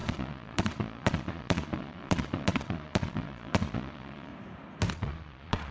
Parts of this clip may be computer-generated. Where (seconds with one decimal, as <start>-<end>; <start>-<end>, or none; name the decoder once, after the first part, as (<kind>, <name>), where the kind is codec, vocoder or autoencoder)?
0.0-4.3 (vocoder, Vocos); 4.9-5.7